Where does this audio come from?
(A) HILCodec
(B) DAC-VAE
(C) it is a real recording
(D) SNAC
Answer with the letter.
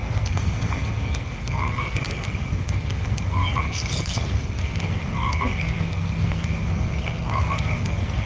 D